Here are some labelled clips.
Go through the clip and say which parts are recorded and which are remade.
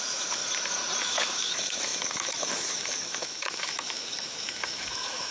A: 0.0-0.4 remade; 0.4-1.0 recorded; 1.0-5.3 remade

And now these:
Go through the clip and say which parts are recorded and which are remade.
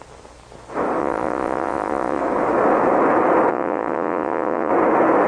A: 0.0-1.0 recorded; 1.0-2.2 remade; 2.2-3.5 recorded; 3.5-4.7 remade; 4.7-5.3 recorded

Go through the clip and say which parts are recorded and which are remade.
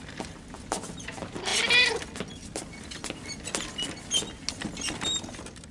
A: 0.0-5.7 recorded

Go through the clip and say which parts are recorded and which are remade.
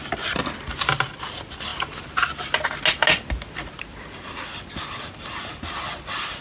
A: 0.0-6.4 recorded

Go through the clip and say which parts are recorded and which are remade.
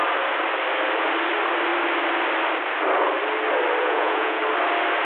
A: 0.0-3.8 recorded; 3.8-4.4 remade; 4.4-5.0 recorded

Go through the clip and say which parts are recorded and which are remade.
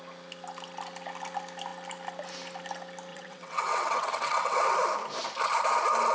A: 0.0-3.1 recorded; 3.1-4.7 remade; 4.7-6.1 recorded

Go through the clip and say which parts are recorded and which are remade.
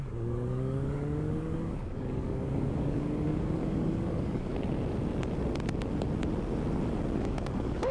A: 0.0-4.5 remade; 4.5-7.2 recorded; 7.2-7.9 remade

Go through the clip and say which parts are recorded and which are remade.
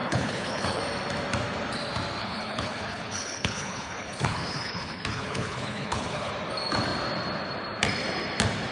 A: 0.0-0.8 remade; 0.8-2.2 recorded; 2.2-6.3 remade; 6.3-8.7 recorded